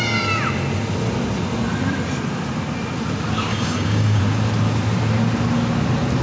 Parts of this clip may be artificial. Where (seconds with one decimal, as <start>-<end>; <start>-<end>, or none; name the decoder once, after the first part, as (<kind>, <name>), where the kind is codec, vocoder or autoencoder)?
3.5-4.2 (codec, DAC)